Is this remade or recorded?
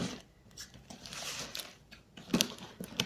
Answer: recorded